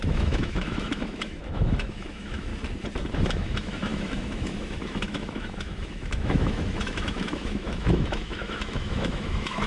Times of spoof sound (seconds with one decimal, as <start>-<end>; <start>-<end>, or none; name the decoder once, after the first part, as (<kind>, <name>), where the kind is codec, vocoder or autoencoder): 0.0-2.5 (autoencoder, DAC-VAE); 3.1-9.7